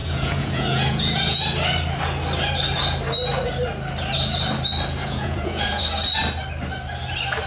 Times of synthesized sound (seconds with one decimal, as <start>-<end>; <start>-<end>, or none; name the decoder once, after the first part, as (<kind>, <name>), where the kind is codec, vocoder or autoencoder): 0.0-1.4 (vocoder, Vocos); 5.0-5.8